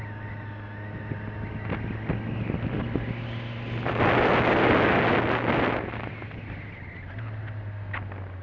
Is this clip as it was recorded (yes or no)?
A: yes